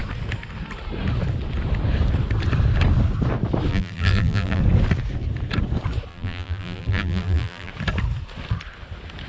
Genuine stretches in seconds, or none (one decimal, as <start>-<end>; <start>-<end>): 0.0-3.7; 4.6-6.1; 7.7-9.3